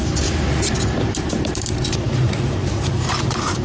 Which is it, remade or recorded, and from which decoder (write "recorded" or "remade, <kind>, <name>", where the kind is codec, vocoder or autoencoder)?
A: remade, vocoder, BigVGAN v2